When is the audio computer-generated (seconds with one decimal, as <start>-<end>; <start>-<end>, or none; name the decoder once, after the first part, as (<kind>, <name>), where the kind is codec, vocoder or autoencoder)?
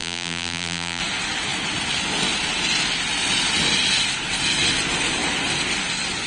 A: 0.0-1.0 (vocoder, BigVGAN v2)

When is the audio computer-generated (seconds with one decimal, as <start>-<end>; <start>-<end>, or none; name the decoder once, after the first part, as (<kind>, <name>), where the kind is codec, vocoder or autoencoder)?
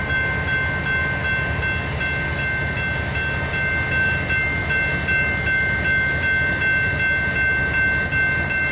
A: none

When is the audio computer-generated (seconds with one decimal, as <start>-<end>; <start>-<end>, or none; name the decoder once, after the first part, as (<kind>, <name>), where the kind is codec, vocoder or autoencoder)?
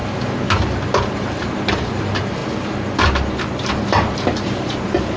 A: 1.1-2.4 (vocoder, BigVGAN v2); 3.7-5.2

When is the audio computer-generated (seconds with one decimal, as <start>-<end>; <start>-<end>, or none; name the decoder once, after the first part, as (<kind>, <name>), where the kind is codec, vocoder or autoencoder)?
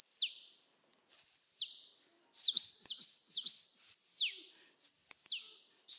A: 3.4-4.4 (vocoder, BigVGAN v2)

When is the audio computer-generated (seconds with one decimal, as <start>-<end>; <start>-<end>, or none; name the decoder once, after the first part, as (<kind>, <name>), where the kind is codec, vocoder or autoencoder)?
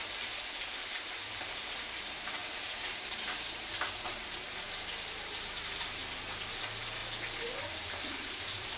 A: 0.0-6.0 (vocoder, BigVGAN v2); 6.5-7.0; 7.6-8.8